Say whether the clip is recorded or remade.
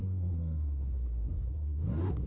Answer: remade